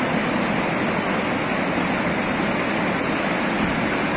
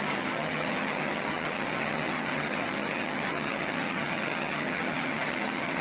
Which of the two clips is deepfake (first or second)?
second